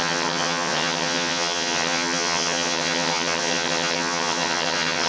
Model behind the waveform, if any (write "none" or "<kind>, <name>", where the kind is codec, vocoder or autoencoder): vocoder, HiFi-GAN